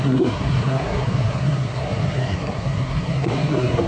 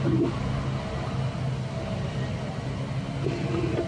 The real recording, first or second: second